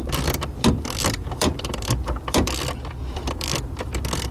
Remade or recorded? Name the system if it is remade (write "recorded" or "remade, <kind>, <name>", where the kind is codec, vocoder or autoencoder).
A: remade, vocoder, BigVGAN v2